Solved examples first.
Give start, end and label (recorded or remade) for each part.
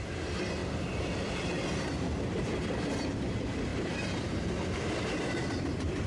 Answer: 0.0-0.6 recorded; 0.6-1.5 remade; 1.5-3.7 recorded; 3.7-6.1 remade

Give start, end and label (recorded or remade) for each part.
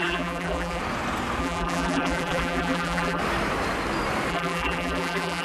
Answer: 0.0-0.8 remade; 0.8-1.4 recorded; 1.4-3.2 remade; 3.2-4.3 recorded; 4.3-5.4 remade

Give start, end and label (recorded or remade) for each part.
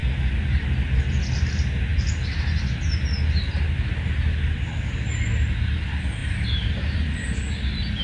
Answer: 0.0-6.2 recorded; 6.2-6.7 remade; 6.7-8.0 recorded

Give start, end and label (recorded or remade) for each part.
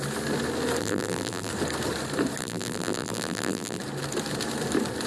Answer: 0.0-0.8 recorded; 0.8-1.5 remade; 1.5-2.4 recorded; 2.4-3.8 remade; 3.8-5.1 recorded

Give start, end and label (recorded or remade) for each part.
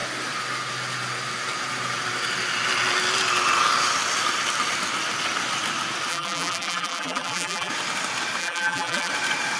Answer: 0.0-6.1 recorded; 6.1-7.7 remade; 7.7-8.4 recorded; 8.4-9.1 remade; 9.1-9.6 recorded